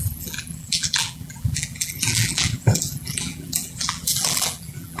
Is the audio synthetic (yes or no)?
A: yes